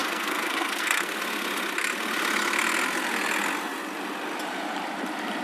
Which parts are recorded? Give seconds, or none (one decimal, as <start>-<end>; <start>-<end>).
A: 1.2-5.4